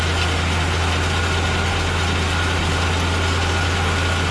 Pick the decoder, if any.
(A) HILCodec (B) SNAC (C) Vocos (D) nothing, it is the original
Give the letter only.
D